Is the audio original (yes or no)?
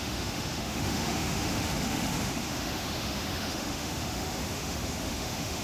no